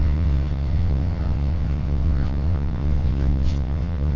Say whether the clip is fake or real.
fake